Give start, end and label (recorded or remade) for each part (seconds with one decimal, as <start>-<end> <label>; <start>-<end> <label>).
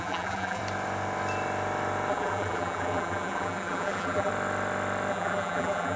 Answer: 0.0-0.6 remade; 0.6-2.1 recorded; 2.1-4.3 remade; 4.3-5.1 recorded; 5.1-6.0 remade